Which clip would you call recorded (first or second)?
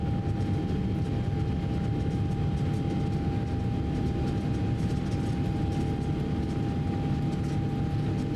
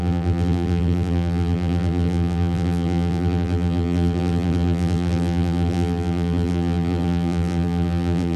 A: first